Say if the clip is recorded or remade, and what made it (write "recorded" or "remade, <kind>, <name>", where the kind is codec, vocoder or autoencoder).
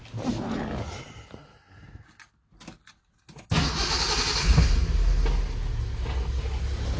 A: recorded